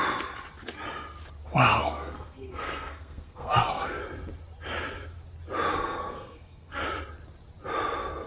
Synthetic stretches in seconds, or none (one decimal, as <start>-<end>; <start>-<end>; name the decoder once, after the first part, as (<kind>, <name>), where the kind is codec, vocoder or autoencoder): 1.8-4.0 (codec, SNAC); 5.7-6.8